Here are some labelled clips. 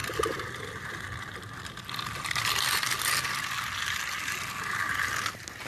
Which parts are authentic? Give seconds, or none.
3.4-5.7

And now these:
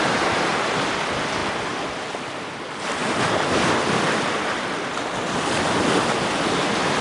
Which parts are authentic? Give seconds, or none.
0.0-3.0; 5.8-7.0

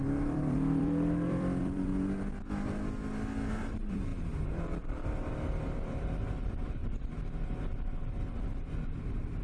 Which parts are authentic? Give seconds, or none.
1.9-3.5; 6.8-8.8

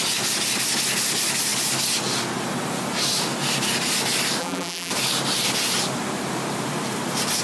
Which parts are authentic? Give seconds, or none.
0.0-4.4; 4.9-7.4

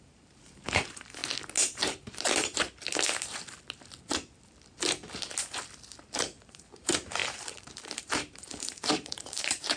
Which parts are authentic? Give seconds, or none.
1.2-6.4

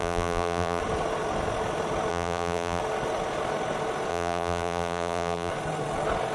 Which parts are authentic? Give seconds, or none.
0.8-2.1; 2.8-4.1; 5.5-6.3

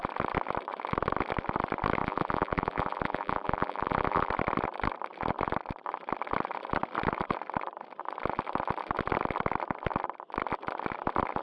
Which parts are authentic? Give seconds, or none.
0.0-2.0; 4.3-11.4